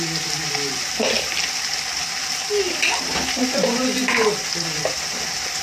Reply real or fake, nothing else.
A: real